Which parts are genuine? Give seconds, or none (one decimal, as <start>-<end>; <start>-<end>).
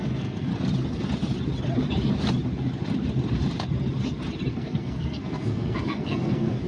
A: 0.5-4.5